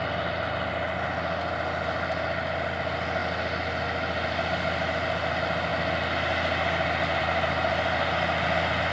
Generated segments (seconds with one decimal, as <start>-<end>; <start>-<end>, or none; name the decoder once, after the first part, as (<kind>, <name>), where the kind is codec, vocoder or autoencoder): none